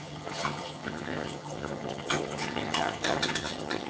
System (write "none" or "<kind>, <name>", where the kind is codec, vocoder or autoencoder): vocoder, HiFi-GAN